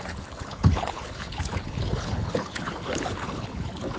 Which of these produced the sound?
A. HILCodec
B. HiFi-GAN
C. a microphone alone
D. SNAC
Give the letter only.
A